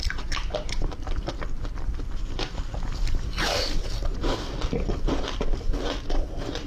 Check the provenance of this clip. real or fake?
fake